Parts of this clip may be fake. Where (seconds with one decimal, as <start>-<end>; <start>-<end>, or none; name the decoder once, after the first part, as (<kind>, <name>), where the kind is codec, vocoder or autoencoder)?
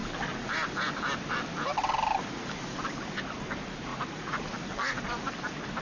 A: 3.9-4.5 (vocoder, Vocos)